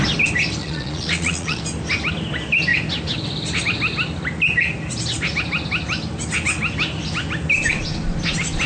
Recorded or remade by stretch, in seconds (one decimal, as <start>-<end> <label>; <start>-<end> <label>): 0.0-0.6 recorded; 0.6-1.6 remade; 1.6-8.7 recorded